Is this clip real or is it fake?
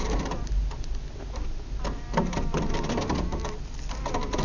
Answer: real